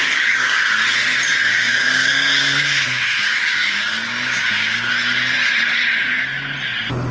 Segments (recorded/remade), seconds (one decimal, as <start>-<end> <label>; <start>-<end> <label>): 0.0-0.6 remade; 0.6-1.5 recorded; 1.5-4.9 remade; 4.9-7.1 recorded